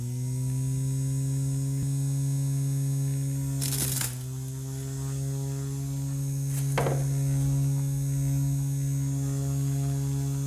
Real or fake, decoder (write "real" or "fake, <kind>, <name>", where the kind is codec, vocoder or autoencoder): real